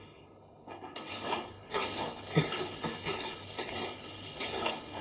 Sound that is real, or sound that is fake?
fake